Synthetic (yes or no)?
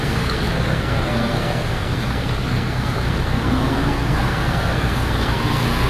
yes